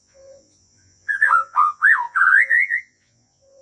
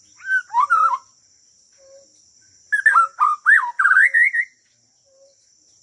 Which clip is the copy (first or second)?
first